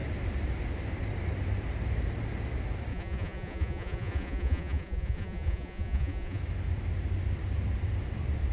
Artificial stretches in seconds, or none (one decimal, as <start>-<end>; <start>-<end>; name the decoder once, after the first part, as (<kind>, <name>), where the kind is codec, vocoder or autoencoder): 2.9-6.4 (vocoder, Vocos)